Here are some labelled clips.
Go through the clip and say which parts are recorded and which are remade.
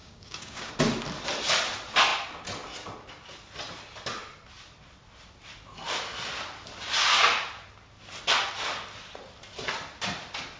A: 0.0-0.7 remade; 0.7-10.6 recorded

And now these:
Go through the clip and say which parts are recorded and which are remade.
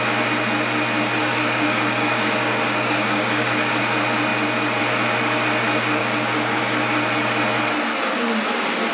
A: 0.0-1.2 recorded; 1.2-3.8 remade; 3.8-6.0 recorded; 6.0-6.6 remade; 6.6-8.9 recorded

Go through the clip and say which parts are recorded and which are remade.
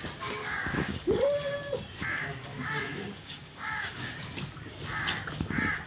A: 0.0-0.4 recorded; 0.4-1.2 remade; 1.2-2.1 recorded; 2.1-4.3 remade; 4.3-5.9 recorded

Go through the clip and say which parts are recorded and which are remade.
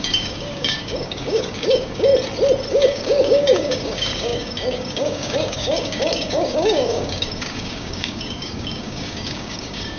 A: 0.0-2.1 remade; 2.1-2.7 recorded; 2.7-10.0 remade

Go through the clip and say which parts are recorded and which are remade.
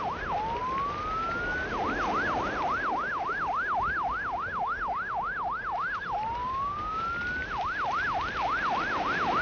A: 0.0-6.4 recorded; 6.4-7.0 remade; 7.0-9.4 recorded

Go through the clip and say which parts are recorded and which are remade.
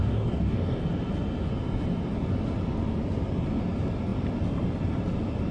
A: 0.0-0.8 remade; 0.8-5.5 recorded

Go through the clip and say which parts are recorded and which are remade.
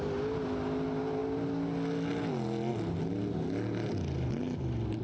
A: 0.0-5.0 recorded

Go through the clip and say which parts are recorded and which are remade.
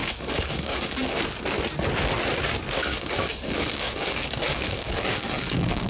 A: 0.0-1.2 remade; 1.2-2.8 recorded; 2.8-5.9 remade